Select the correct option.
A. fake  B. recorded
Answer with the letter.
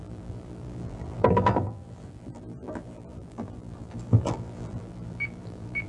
A